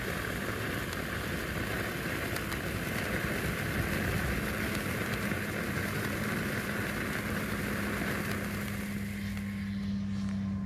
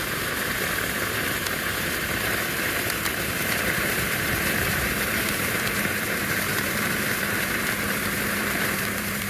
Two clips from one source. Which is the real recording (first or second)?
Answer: first